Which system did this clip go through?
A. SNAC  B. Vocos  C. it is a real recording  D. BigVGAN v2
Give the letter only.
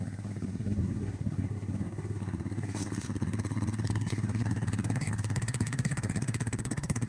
A